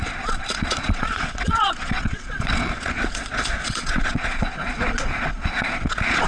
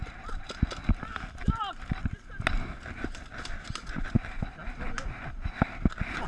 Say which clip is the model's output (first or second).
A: first